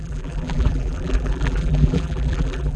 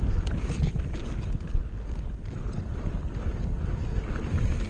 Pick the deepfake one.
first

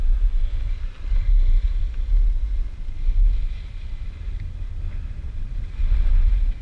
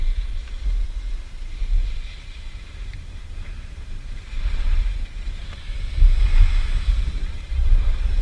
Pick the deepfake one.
second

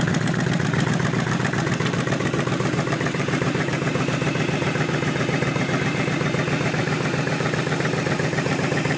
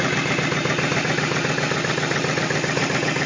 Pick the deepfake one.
first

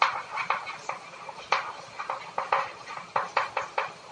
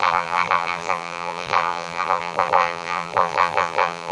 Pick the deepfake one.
second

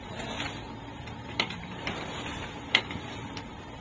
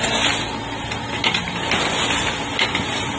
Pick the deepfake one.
first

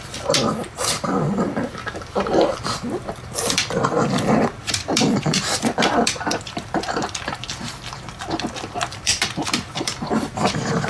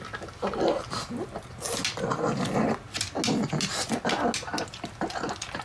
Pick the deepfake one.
first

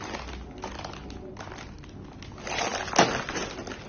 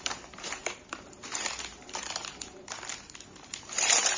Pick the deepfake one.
second